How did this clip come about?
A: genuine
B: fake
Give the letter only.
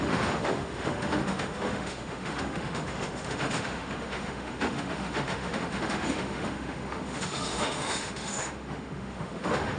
B